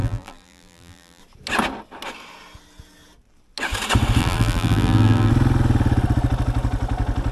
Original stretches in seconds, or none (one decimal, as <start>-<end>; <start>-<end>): 1.2-4.2; 5.3-7.3